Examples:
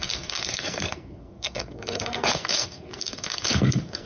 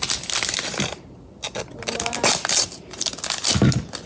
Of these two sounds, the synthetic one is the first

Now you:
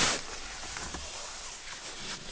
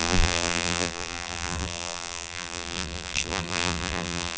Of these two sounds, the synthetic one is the second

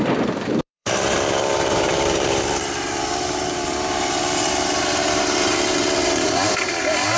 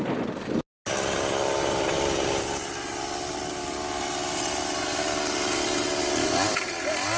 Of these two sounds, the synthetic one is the first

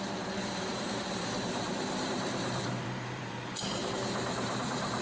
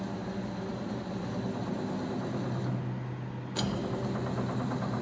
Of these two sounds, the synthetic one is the first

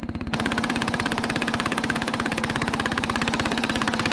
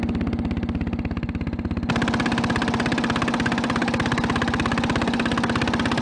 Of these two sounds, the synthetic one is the first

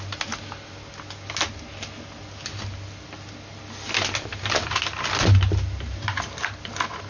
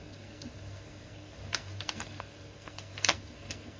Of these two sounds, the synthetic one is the second